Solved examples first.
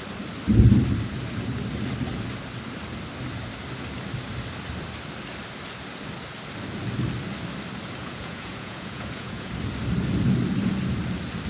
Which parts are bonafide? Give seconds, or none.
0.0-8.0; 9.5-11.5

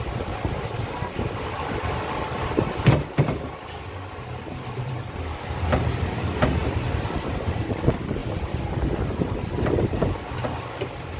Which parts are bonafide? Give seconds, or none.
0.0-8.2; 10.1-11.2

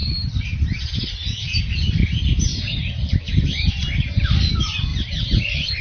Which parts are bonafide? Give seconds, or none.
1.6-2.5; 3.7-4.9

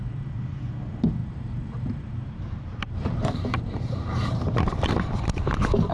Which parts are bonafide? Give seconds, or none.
0.0-1.2; 4.7-5.9

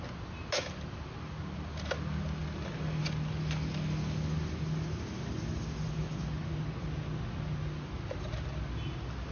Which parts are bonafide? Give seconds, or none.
0.0-9.3